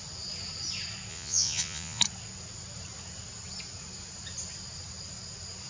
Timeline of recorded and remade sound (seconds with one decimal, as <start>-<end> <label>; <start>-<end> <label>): 0.0-1.1 recorded; 1.1-2.0 remade; 2.0-5.7 recorded